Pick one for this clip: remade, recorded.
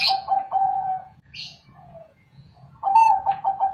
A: remade